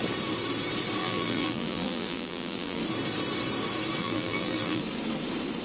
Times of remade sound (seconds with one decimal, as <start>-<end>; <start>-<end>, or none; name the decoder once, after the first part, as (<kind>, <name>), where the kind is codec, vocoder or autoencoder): 1.0-2.8 (vocoder, BigVGAN v2); 4.0-4.8